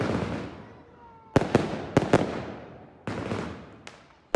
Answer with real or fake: real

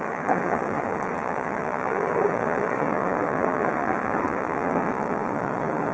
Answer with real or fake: fake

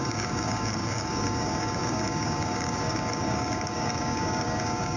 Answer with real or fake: fake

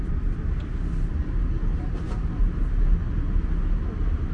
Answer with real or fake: real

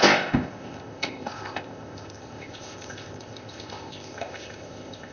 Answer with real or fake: fake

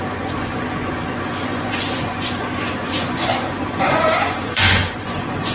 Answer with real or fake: fake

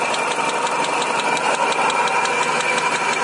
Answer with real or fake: real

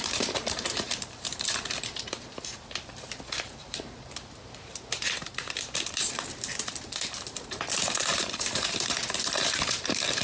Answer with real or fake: fake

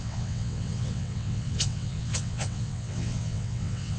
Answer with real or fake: fake